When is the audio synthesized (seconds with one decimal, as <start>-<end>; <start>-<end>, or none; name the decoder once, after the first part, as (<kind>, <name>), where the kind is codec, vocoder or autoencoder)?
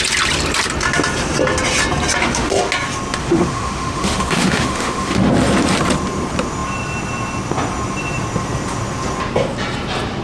2.2-2.7 (autoencoder, DAC-VAE); 3.2-5.3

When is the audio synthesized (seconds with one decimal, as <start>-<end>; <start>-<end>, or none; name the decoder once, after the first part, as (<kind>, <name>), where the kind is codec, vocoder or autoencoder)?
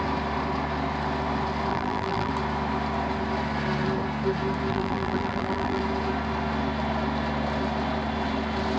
1.7-2.3 (vocoder, BigVGAN v2); 4.7-5.8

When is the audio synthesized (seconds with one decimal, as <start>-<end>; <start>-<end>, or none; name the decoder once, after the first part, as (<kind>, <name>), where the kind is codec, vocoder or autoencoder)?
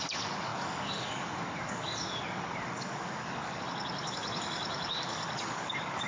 0.0-6.1 (codec, DAC)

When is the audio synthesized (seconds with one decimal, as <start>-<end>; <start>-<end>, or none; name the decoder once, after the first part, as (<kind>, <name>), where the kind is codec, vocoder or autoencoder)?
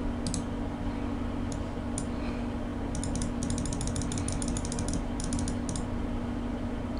none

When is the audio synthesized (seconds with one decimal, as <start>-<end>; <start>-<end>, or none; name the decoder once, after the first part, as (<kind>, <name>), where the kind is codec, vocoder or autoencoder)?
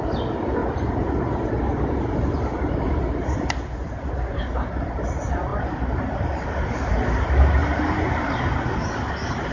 none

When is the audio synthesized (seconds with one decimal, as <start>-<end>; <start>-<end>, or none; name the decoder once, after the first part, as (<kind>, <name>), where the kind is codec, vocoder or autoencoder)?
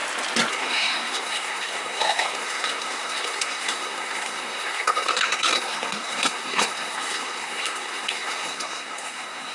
0.5-9.5 (codec, SNAC)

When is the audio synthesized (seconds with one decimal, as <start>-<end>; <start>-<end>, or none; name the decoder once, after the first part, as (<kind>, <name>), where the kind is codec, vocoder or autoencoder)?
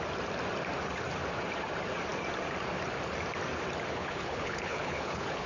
4.0-5.5 (codec, HILCodec)